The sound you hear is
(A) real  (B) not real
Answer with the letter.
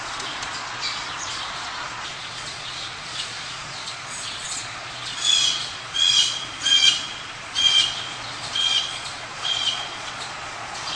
B